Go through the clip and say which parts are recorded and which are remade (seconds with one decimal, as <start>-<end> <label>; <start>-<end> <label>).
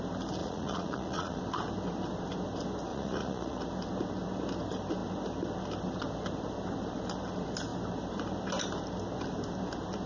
0.0-0.4 recorded; 0.4-1.4 remade; 1.4-2.9 recorded; 2.9-3.6 remade; 3.6-10.1 recorded